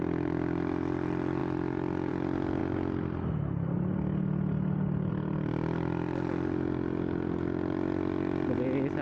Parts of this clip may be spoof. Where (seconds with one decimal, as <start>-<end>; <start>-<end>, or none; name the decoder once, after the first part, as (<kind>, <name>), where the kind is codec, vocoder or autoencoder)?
none